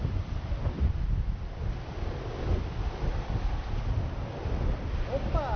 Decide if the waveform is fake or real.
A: real